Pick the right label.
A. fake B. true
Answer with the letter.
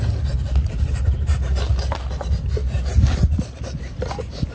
B